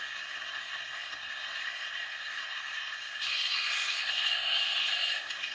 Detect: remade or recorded remade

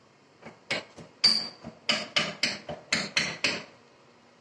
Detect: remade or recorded recorded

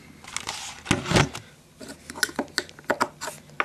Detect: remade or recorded recorded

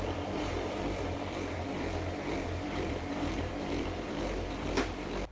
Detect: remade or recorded remade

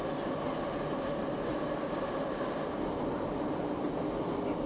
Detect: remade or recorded recorded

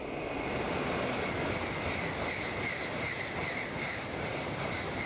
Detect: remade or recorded remade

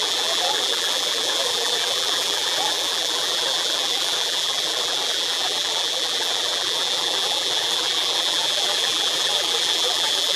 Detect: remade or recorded remade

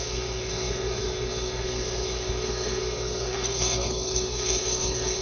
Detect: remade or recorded remade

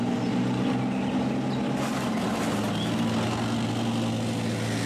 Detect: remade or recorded recorded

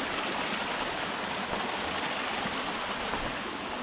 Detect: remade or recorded recorded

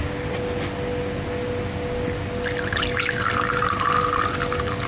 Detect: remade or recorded recorded